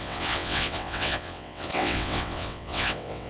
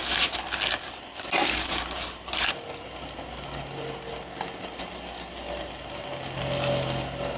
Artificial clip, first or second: first